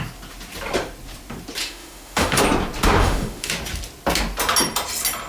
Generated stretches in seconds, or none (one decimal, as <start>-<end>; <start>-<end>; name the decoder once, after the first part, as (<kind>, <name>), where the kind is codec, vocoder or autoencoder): 1.6-2.4 (autoencoder, DAC-VAE); 3.0-3.5